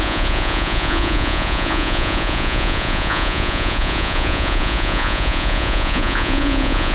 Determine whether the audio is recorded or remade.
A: remade